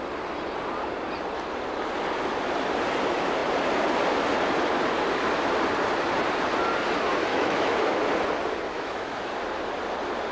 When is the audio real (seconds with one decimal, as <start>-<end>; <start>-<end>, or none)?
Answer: 0.0-7.3; 8.0-8.7; 9.3-10.3